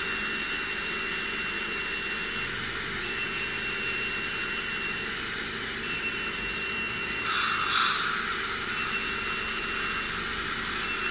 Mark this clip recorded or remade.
recorded